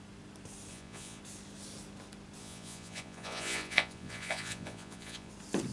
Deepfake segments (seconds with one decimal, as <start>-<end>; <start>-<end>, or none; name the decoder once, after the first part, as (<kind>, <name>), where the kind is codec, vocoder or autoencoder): 0.7-1.2 (vocoder, Vocos); 2.4-5.3